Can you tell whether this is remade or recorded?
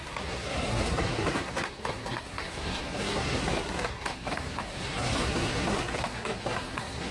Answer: remade